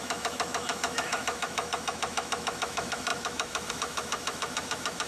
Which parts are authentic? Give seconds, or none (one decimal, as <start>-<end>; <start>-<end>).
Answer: none